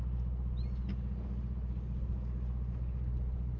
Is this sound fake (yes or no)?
no